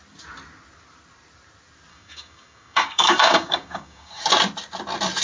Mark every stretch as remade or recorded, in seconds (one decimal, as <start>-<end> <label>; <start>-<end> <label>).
0.0-1.9 recorded; 1.9-4.2 remade; 4.2-5.2 recorded